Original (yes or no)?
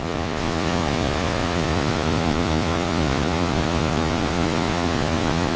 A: no